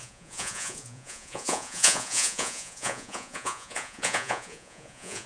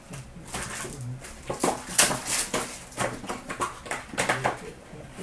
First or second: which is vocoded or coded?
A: first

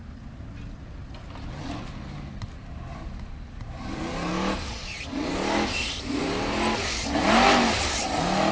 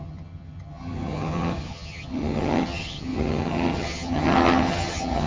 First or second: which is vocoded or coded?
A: second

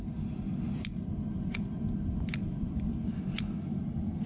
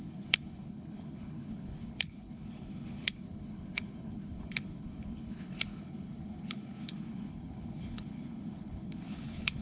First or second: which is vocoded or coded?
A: second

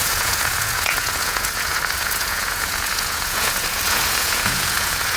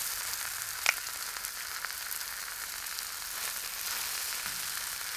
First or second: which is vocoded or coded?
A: first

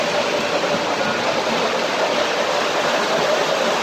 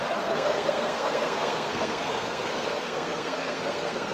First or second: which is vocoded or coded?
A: second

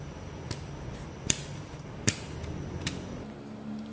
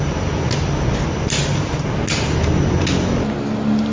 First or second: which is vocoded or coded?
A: first